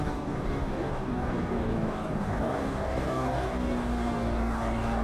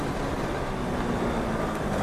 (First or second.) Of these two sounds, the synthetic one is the first